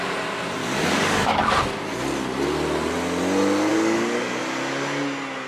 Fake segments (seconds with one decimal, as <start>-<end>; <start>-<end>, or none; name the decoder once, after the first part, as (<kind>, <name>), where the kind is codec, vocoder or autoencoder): 0.6-1.4 (codec, DAC); 3.7-4.4